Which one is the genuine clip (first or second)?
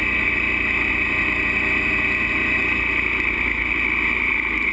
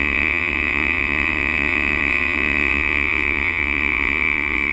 first